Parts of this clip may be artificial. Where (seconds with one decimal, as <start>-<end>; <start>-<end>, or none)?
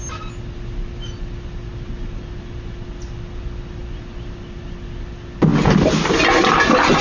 none